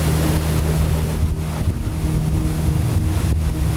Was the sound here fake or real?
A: real